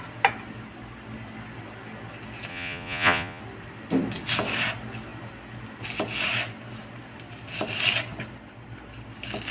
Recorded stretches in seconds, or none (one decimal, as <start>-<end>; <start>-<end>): 0.0-2.5; 3.4-9.5